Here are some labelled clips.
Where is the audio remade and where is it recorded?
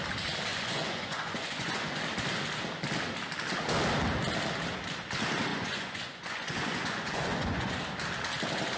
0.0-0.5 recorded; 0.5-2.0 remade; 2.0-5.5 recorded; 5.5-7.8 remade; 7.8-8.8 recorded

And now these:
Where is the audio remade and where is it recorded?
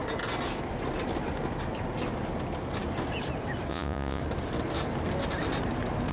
0.0-3.7 recorded; 3.7-4.2 remade; 4.2-6.1 recorded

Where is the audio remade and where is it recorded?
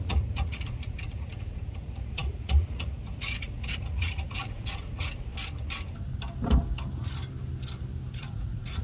0.0-5.3 remade; 5.3-8.2 recorded; 8.2-8.8 remade